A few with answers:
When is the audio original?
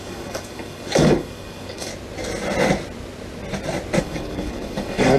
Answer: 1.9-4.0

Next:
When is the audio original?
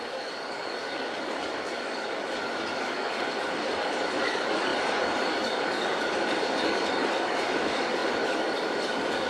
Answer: none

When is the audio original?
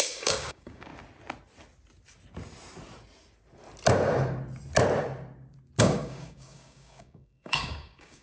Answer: 0.9-5.8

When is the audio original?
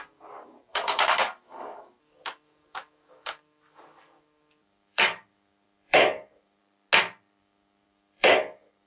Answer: 6.6-7.4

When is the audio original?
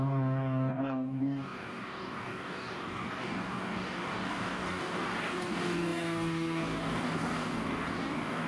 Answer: none